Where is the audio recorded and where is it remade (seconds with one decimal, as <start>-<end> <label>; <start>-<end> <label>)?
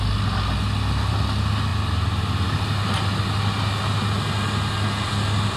0.0-5.6 recorded